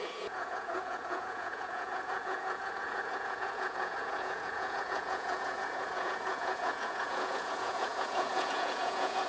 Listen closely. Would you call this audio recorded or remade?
remade